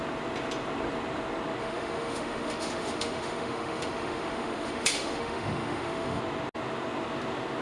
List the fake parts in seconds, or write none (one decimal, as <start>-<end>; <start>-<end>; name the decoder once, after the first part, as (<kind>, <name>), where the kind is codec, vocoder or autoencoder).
1.6-6.2 (autoencoder, DAC-VAE)